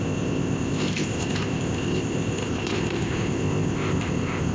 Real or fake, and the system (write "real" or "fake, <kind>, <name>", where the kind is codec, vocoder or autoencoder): fake, codec, ZipCodec